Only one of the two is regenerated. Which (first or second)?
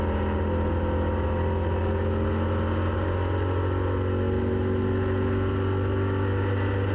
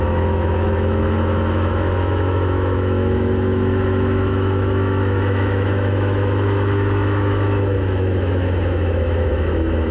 second